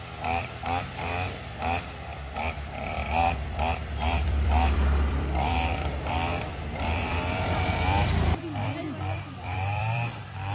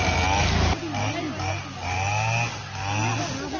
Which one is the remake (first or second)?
first